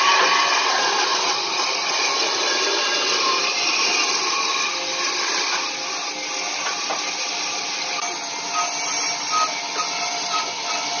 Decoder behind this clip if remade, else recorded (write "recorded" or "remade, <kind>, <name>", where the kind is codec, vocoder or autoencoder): recorded